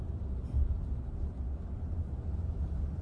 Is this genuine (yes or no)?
yes